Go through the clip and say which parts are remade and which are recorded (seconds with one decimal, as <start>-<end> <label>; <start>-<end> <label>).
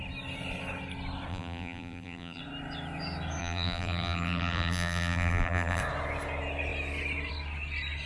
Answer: 0.0-1.3 recorded; 1.3-2.4 remade; 2.4-3.4 recorded; 3.4-5.8 remade; 5.8-8.1 recorded